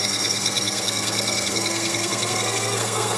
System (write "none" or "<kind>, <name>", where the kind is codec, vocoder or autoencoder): codec, SNAC